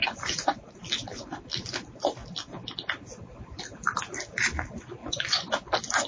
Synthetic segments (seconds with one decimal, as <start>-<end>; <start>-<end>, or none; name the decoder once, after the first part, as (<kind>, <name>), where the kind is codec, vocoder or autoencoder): 5.0-5.5 (vocoder, Vocos)